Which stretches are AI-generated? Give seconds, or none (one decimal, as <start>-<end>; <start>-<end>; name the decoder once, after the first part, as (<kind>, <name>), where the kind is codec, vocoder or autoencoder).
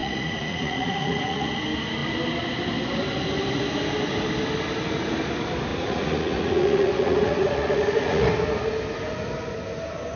0.0-1.6 (vocoder, Vocos); 5.7-8.3